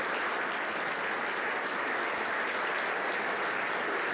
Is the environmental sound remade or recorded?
recorded